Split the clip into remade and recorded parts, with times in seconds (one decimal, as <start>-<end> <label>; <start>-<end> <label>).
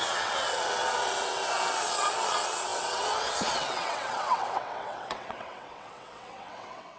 0.0-7.0 remade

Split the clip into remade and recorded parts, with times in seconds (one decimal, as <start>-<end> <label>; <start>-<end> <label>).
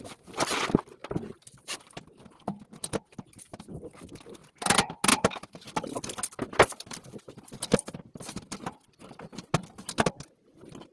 0.0-3.7 recorded; 3.7-4.4 remade; 4.4-5.1 recorded; 5.1-7.3 remade; 7.3-9.0 recorded; 9.0-10.9 remade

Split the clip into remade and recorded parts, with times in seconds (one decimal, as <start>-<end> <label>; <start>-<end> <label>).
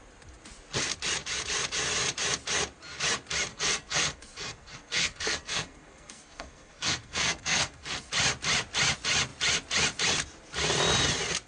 0.0-3.5 recorded; 3.5-8.1 remade; 8.1-11.5 recorded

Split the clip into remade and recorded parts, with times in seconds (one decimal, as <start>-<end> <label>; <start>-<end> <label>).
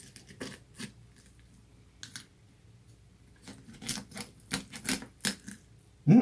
0.0-6.2 recorded